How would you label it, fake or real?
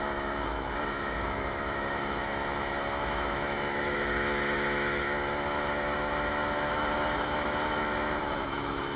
fake